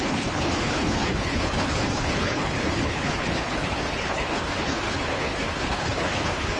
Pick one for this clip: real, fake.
fake